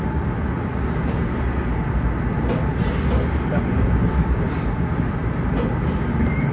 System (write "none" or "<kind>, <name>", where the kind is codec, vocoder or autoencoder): none